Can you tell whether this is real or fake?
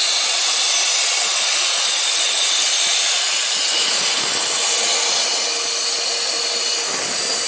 real